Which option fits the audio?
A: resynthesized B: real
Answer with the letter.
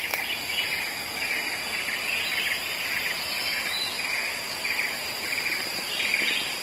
B